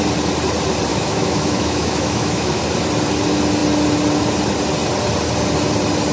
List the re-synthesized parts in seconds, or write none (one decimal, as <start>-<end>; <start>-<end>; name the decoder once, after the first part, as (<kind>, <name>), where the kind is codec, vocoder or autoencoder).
0.9-2.6 (autoencoder, DAC-VAE)